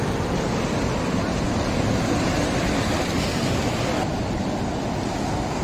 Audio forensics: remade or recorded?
recorded